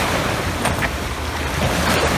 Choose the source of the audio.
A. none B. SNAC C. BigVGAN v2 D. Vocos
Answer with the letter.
C